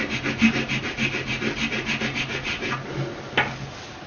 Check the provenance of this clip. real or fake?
real